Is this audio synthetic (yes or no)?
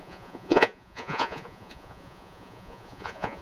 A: yes